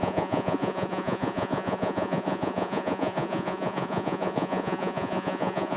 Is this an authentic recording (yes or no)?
no